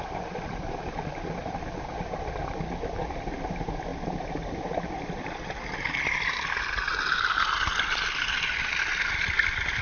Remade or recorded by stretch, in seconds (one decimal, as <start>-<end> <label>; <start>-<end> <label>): 0.0-9.8 recorded